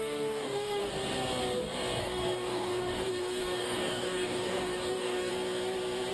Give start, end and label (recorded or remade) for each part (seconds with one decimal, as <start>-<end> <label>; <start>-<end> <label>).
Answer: 0.0-0.8 remade; 0.8-2.0 recorded; 2.0-5.3 remade; 5.3-6.1 recorded

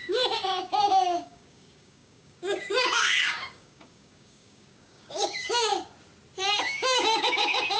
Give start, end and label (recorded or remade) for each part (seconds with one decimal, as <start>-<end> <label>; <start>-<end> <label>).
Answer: 0.0-5.7 remade; 5.7-6.6 recorded; 6.6-7.8 remade

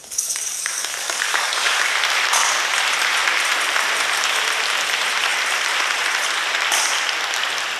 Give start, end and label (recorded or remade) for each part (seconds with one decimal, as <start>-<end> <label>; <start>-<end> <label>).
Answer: 0.0-1.9 remade; 1.9-7.8 recorded

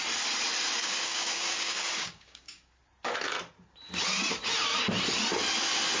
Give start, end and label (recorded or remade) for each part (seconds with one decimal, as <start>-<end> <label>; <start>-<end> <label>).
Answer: 0.0-0.8 recorded; 0.8-2.7 remade; 2.7-6.0 recorded

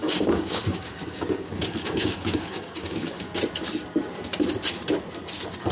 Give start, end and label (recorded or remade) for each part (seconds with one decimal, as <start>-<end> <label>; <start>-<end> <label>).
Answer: 0.0-3.4 remade; 3.4-5.7 recorded

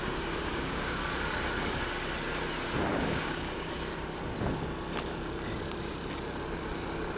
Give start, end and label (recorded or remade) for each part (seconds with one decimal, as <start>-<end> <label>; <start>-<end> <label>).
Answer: 0.0-0.5 recorded; 0.5-1.0 remade; 1.0-2.9 recorded; 2.9-3.7 remade; 3.7-7.2 recorded

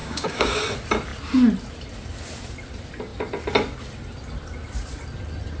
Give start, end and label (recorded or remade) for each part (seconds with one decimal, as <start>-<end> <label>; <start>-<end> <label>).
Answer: 0.0-0.6 remade; 0.6-5.6 recorded

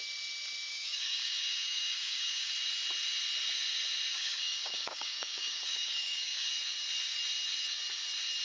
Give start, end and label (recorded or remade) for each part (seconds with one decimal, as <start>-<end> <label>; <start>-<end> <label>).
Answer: 0.0-0.7 recorded; 0.7-2.5 remade; 2.5-4.1 recorded; 4.1-6.5 remade; 6.5-8.4 recorded